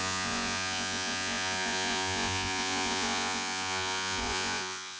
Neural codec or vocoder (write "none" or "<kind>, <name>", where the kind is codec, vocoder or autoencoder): vocoder, Vocos